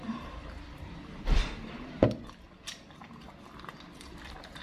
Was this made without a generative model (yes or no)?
no